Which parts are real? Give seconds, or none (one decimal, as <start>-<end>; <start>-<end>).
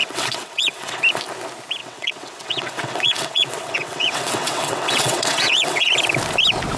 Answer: 1.0-1.8; 5.9-6.8